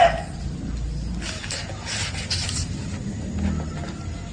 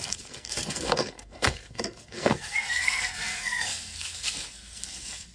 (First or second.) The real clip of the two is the first